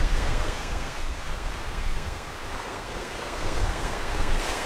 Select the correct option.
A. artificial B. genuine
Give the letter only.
A